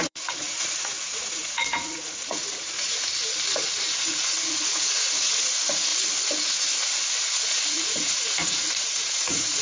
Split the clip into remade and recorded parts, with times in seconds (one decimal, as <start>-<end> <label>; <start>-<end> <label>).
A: 0.0-3.1 remade; 3.1-3.8 recorded; 3.8-5.9 remade; 5.9-6.8 recorded; 6.8-9.6 remade